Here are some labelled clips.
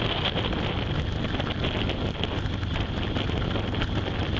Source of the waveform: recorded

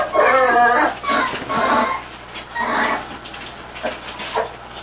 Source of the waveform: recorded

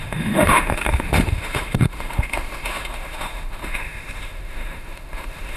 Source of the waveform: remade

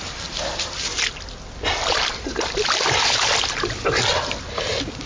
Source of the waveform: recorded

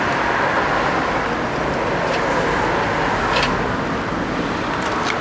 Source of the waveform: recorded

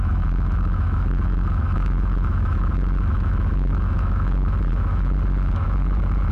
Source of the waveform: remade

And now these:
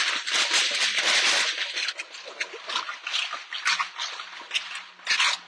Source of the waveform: recorded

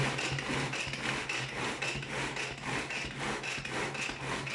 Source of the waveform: recorded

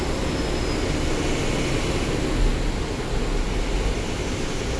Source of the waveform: recorded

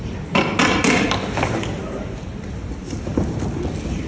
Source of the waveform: recorded